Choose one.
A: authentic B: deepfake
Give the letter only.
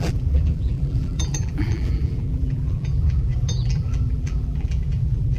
B